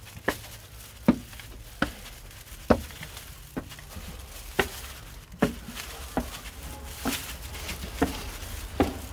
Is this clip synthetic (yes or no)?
no